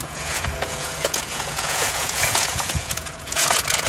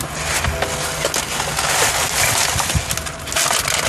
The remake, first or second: first